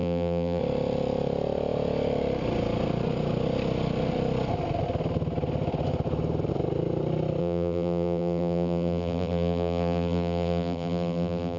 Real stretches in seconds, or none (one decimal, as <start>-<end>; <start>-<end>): 0.6-7.4